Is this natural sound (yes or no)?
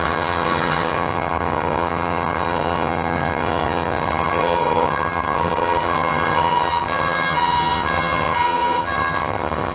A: no